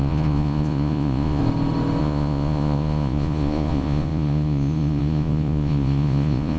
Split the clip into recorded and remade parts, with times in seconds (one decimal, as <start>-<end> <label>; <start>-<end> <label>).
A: 0.0-1.4 remade; 1.4-2.0 recorded; 2.0-6.6 remade